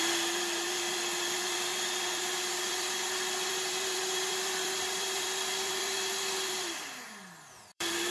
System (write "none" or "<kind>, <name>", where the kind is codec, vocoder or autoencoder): vocoder, BigVGAN v2